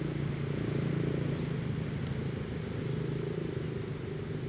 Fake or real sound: real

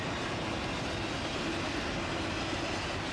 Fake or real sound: real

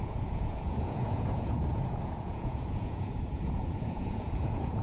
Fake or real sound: fake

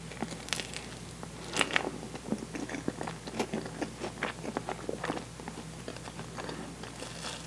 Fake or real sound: real